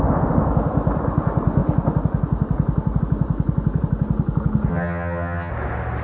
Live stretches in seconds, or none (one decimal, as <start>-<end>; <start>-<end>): 0.0-4.7; 5.5-6.0